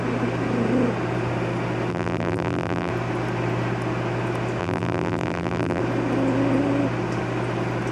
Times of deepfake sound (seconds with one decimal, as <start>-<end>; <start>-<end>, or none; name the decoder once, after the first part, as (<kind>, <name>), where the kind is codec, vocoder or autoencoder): 1.9-2.9 (vocoder, BigVGAN v2); 4.6-5.8

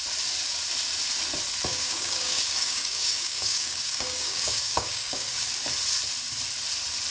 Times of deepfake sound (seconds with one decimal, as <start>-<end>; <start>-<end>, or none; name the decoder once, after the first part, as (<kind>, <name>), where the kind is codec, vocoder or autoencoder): 1.7-5.5 (codec, DAC)

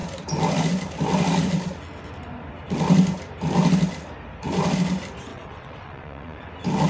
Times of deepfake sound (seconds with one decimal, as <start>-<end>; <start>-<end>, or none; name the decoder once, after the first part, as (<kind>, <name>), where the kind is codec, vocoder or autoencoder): 5.3-6.5 (vocoder, WaveNeXt)

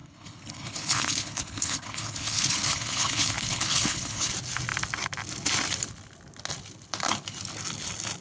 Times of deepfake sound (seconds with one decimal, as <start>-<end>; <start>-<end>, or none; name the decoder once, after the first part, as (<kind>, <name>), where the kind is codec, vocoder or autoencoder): 0.0-4.3 (codec, HILCodec)

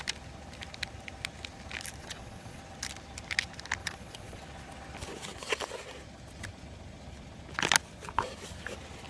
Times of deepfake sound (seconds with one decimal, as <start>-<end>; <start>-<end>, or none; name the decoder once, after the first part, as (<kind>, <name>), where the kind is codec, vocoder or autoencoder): 2.0-2.6 (vocoder, Vocos); 3.8-4.4

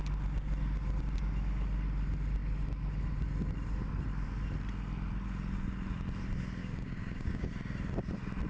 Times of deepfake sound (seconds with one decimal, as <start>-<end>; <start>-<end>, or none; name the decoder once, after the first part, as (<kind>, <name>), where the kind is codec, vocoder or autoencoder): 6.6-7.5 (codec, DAC)

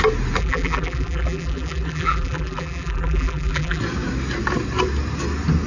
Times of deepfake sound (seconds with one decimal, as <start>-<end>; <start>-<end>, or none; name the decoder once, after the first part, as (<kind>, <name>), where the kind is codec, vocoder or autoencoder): 0.4-3.8 (vocoder, BigVGAN v2)

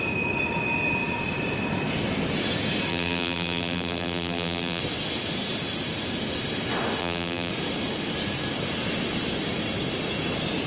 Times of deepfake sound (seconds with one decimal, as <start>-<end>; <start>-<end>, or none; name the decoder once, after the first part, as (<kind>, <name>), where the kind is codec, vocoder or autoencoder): 2.9-4.8 (vocoder, BigVGAN v2); 7.0-7.5